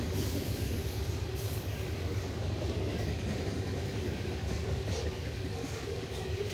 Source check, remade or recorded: remade